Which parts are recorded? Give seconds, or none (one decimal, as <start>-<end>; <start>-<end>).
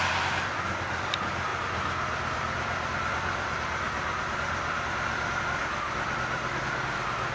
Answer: 0.0-7.3